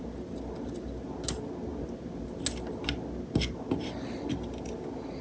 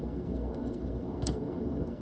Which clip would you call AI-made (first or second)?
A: second